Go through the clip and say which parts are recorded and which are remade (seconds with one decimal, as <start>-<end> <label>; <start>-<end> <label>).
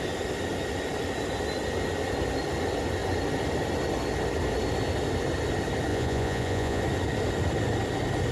0.0-5.9 recorded; 5.9-6.8 remade; 6.8-8.3 recorded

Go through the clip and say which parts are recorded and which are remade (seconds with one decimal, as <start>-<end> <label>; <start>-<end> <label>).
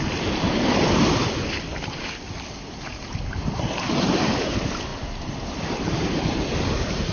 0.0-7.1 recorded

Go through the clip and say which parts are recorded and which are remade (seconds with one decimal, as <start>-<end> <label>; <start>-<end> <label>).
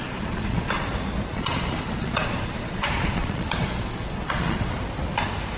0.0-0.9 remade; 0.9-1.3 recorded; 1.3-4.7 remade; 4.7-5.6 recorded